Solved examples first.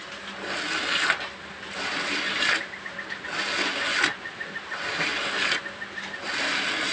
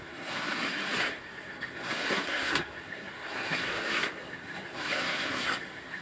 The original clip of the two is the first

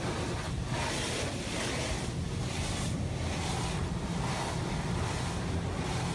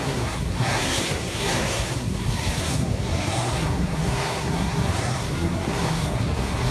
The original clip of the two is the first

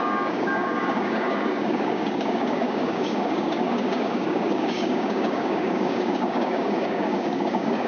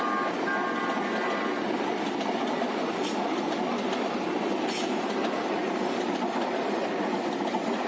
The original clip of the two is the second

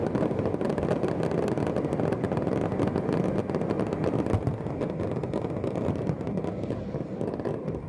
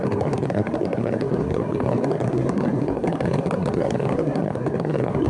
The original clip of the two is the first